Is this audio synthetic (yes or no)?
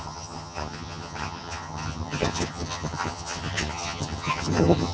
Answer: yes